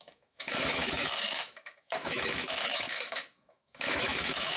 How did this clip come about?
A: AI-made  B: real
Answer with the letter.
A